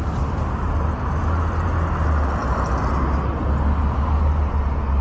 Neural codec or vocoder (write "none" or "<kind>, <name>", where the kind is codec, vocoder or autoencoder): none